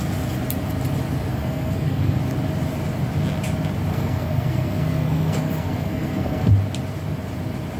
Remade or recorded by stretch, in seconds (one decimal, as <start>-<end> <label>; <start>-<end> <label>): 0.0-1.3 recorded; 1.3-2.2 remade; 2.2-3.9 recorded; 3.9-6.5 remade; 6.5-7.8 recorded